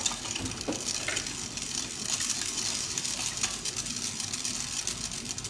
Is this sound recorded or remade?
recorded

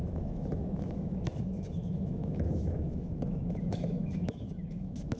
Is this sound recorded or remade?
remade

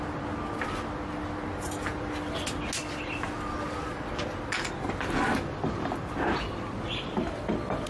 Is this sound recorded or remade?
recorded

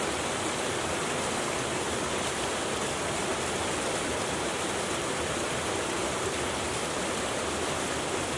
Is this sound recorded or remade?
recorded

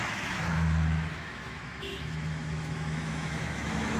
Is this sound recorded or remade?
remade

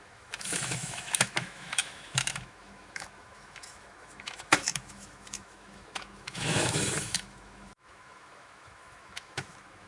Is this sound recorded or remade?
remade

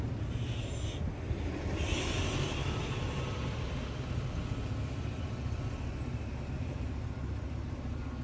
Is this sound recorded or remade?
recorded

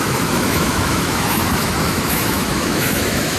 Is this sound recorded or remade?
remade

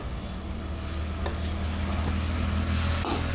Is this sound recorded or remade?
recorded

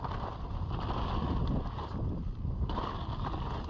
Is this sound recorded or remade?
recorded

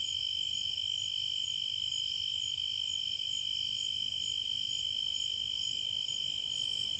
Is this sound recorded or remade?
recorded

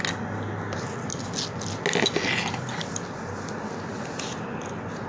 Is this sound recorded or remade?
recorded